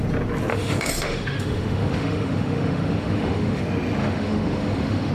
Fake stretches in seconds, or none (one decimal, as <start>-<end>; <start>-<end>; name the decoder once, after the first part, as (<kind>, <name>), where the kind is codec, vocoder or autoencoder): 0.5-3.6 (autoencoder, DAC-VAE); 4.0-5.1